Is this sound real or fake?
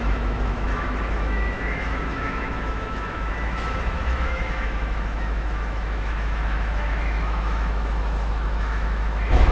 fake